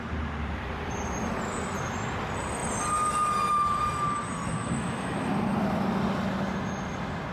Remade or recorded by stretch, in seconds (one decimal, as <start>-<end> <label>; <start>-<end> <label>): 0.0-4.6 recorded; 4.6-5.3 remade; 5.3-7.3 recorded